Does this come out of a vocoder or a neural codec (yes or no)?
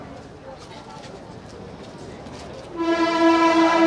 no